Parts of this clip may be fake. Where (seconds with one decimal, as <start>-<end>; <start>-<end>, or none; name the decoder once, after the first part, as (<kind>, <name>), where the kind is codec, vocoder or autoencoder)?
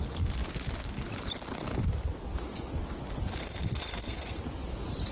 3.4-4.4 (codec, SNAC)